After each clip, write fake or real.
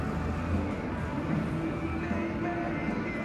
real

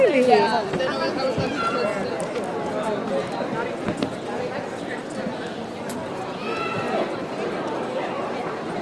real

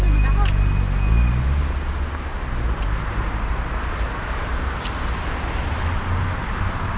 real